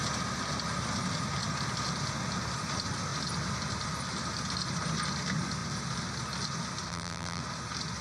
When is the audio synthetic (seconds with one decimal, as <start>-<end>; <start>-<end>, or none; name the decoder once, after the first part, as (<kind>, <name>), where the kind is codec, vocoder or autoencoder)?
6.9-7.4 (vocoder, BigVGAN v2)